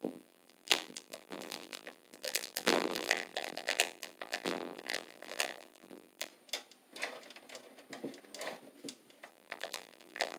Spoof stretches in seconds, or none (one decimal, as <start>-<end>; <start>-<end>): 0.0-6.3; 9.3-10.4

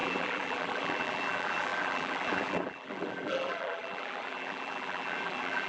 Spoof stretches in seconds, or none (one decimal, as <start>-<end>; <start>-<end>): 0.0-5.7

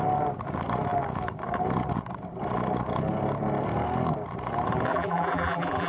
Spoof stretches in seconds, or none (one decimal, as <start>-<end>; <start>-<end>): 4.9-5.9

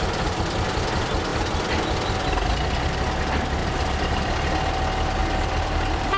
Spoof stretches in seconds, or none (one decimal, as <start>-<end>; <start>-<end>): 3.6-4.4; 5.2-6.2

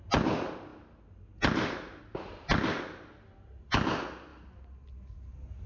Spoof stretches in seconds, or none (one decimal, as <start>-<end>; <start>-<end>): none

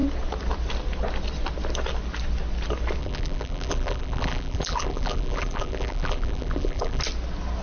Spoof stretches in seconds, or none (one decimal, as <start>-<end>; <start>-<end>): 3.0-7.0